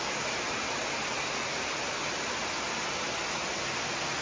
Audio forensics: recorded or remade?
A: recorded